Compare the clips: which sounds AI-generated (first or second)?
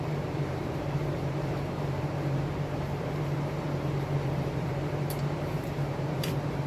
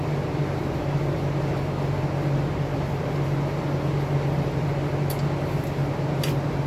first